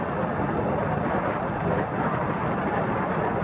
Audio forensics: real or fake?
real